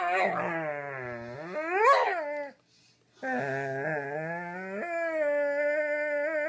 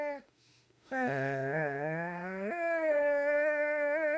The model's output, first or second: second